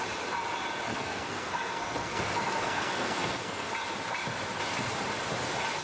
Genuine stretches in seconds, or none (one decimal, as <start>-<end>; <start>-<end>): 0.0-0.9; 3.7-5.8